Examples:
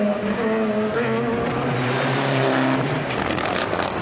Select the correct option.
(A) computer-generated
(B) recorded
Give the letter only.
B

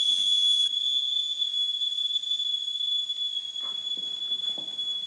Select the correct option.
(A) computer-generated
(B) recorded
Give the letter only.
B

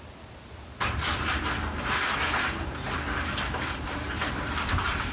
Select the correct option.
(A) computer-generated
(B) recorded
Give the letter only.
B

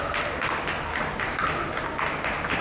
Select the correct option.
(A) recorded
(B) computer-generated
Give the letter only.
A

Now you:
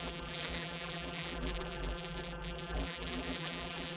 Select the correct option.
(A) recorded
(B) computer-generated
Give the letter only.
B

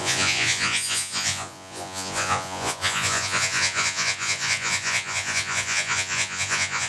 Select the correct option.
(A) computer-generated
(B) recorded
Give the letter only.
A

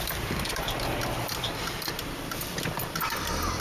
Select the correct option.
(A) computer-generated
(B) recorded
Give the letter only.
A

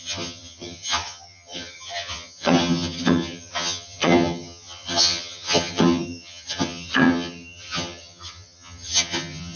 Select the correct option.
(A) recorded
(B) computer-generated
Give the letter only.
B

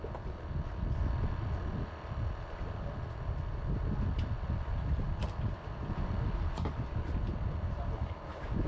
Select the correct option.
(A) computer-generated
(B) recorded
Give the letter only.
B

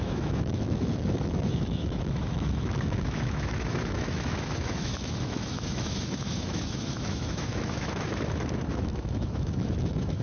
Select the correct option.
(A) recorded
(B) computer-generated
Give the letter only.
B